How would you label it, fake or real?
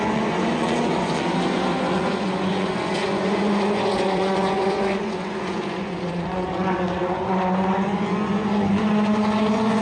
fake